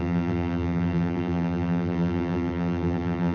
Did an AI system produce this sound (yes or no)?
yes